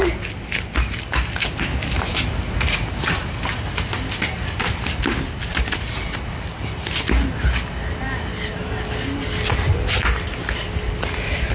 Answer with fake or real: real